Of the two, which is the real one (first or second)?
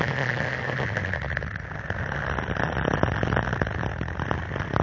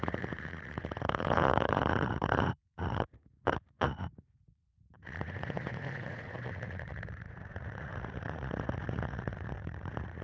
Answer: first